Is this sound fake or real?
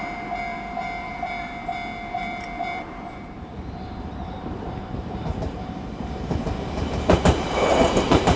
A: fake